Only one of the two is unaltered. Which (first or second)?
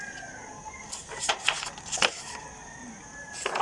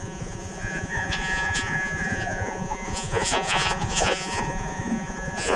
first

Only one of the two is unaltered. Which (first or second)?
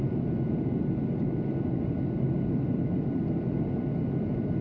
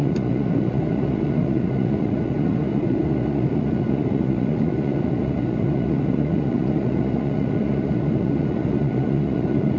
first